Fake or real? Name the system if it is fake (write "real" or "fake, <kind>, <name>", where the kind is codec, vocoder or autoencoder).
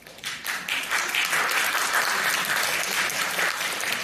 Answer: real